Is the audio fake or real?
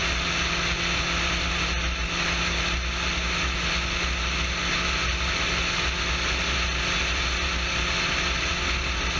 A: real